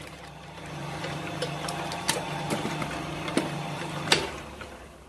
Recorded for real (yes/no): no